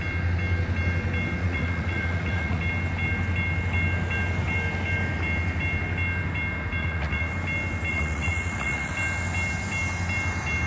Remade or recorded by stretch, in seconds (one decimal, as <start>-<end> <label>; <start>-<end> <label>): 0.0-1.4 recorded; 1.4-2.6 remade; 2.6-6.8 recorded; 6.8-7.3 remade; 7.3-7.9 recorded; 7.9-8.9 remade; 8.9-10.7 recorded